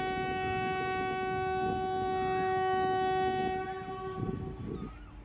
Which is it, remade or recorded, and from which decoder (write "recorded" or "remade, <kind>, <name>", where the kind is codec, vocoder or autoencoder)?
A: recorded